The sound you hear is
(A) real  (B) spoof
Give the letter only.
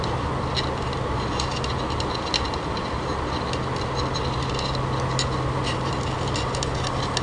A